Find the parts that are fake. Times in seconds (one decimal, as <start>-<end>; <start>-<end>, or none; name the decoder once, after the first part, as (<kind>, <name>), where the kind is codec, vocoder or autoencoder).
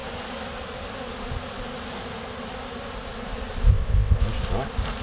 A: 3.7-4.2 (codec, ZipCodec)